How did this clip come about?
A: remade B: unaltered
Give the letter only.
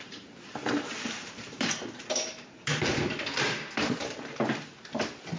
A